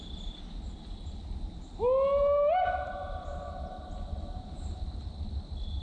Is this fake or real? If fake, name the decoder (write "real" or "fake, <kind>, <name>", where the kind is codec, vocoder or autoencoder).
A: real